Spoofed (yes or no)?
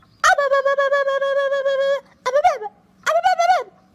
no